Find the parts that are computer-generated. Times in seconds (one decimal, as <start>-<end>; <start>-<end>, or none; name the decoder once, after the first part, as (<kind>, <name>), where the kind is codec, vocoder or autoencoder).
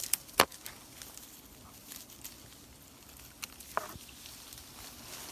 none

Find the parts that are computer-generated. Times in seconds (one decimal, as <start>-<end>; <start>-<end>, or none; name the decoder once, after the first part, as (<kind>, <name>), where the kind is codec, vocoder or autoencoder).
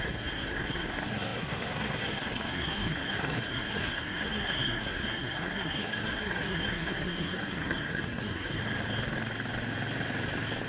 0.0-8.6 (codec, SNAC)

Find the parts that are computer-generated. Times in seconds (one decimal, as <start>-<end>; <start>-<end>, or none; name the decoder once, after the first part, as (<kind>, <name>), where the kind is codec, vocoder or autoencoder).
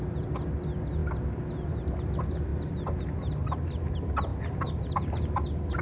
none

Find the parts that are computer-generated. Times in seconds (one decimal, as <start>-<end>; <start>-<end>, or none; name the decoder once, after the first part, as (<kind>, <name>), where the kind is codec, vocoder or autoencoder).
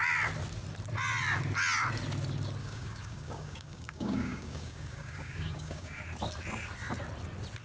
2.6-6.0 (codec, DAC)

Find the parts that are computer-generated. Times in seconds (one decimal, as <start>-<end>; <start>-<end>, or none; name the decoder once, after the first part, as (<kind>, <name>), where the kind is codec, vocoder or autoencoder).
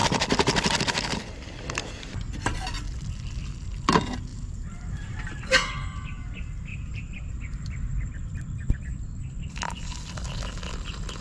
4.3-5.3 (vocoder, BigVGAN v2); 6.7-8.1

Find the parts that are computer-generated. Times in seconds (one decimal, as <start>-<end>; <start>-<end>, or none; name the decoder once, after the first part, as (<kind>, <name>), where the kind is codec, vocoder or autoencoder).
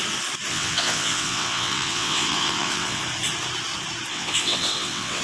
0.5-3.0 (vocoder, WaveNeXt); 4.1-5.2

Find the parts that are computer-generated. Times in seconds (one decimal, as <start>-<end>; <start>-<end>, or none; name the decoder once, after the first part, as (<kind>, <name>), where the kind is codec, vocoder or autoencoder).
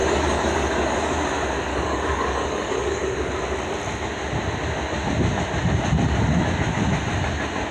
0.0-1.2 (codec, DAC); 1.7-3.3